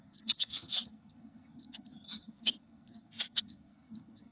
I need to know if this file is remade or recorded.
remade